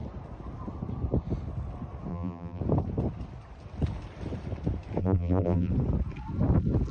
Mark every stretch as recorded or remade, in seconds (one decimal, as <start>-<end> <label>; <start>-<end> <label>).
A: 0.0-2.1 recorded; 2.1-2.6 remade; 2.6-5.0 recorded; 5.0-5.7 remade; 5.7-6.9 recorded